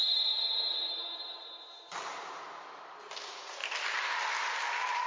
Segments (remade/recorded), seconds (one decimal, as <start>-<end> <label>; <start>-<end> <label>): 0.0-5.1 recorded